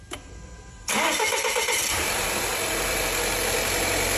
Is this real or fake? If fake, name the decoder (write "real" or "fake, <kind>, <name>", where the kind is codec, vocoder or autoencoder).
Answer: fake, vocoder, BigVGAN v2